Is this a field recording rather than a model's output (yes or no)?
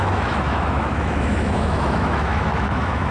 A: no